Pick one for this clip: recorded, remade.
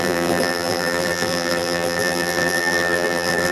remade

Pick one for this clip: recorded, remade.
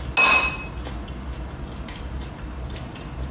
recorded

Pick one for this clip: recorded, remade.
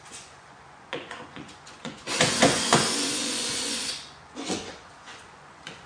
remade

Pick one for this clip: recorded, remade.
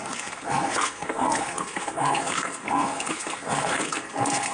remade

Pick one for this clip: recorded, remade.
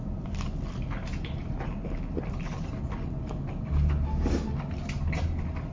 recorded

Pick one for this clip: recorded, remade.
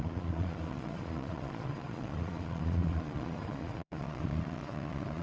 remade